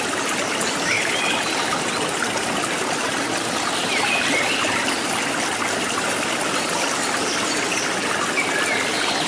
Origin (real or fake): real